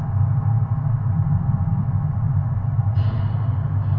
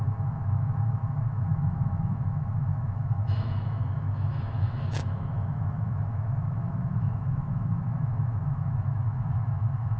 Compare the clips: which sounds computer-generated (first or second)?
second